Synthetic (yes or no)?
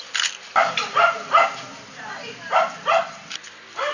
no